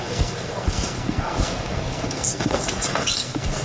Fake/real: fake